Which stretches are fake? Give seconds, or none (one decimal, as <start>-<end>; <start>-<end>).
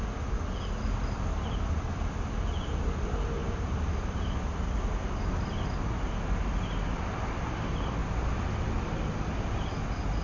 3.4-4.3; 8.0-9.7